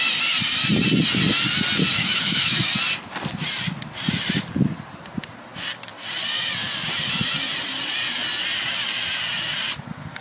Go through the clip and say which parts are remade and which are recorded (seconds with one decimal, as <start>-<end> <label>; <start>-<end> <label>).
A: 0.0-1.9 recorded; 1.9-2.6 remade; 2.6-10.2 recorded